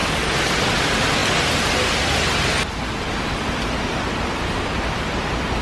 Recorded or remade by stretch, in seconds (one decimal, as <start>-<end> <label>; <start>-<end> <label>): 0.0-5.6 recorded